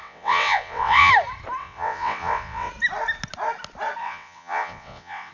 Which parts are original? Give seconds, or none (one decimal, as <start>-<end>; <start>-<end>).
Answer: 1.1-1.6; 2.7-4.0